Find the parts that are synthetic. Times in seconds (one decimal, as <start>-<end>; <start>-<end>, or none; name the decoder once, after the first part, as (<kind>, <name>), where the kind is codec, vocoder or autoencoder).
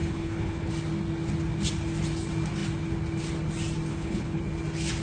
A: 0.0-0.7 (codec, HILCodec); 3.9-4.4